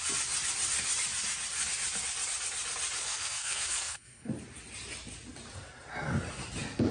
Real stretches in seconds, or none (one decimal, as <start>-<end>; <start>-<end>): 0.0-3.0; 4.3-6.9